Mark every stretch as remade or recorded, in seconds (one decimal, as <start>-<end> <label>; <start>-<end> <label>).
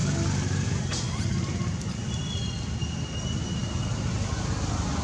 0.0-5.0 recorded